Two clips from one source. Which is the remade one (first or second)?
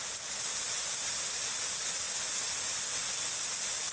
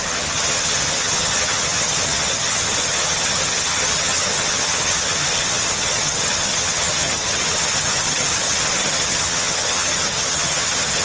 second